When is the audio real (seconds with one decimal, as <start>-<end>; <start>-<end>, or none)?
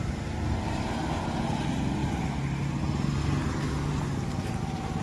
0.0-5.0